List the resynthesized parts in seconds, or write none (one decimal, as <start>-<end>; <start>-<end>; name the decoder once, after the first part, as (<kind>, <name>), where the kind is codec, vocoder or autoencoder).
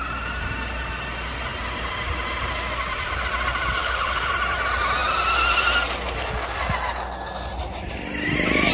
3.8-4.3 (codec, HILCodec)